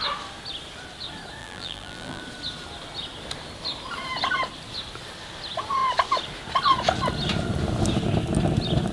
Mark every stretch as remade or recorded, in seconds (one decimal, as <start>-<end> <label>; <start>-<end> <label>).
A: 0.0-1.4 recorded; 1.4-2.2 remade; 2.2-8.9 recorded